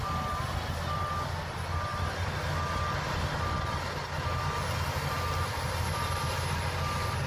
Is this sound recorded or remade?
recorded